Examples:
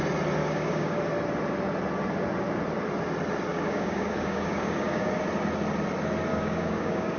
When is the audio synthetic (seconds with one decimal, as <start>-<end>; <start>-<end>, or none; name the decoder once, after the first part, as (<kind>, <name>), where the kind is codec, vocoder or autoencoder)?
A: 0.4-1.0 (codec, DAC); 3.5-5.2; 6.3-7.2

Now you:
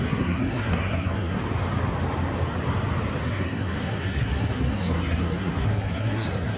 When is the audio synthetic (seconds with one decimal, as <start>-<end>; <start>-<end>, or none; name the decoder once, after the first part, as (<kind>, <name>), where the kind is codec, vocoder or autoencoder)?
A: 0.0-1.4 (codec, SNAC); 3.2-6.6

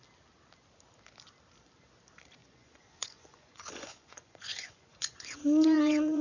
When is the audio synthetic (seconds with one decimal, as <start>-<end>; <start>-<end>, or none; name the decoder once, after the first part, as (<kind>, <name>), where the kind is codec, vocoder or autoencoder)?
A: 2.4-6.2 (vocoder, Vocos)

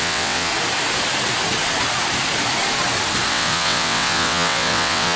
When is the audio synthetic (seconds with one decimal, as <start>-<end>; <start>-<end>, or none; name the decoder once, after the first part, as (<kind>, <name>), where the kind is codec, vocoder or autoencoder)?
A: 0.0-0.5 (vocoder, WaveNeXt); 3.3-5.2

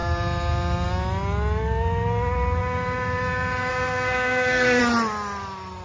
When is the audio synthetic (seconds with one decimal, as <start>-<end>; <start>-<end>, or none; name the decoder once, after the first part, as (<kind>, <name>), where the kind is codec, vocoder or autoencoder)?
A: 3.7-4.8 (codec, SNAC)

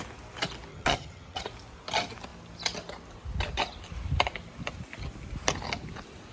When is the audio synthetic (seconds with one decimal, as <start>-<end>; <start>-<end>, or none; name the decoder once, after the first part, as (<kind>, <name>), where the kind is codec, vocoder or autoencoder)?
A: 0.7-1.4 (vocoder, HiFi-GAN)